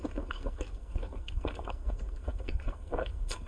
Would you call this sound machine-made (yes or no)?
yes